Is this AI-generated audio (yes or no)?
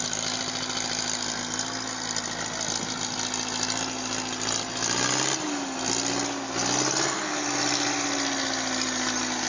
no